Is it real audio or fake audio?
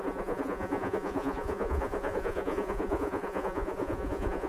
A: fake